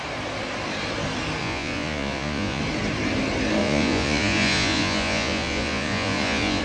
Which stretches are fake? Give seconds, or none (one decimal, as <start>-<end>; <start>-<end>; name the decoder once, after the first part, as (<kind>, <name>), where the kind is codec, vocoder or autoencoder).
1.4-2.6 (vocoder, Vocos); 3.6-6.6